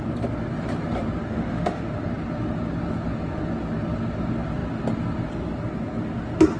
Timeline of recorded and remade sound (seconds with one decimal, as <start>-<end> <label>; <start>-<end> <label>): 0.0-1.3 recorded; 1.3-1.9 remade; 1.9-6.6 recorded